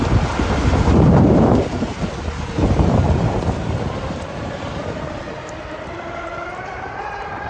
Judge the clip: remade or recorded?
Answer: remade